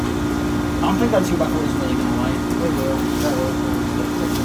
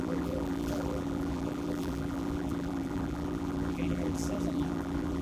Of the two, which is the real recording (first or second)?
first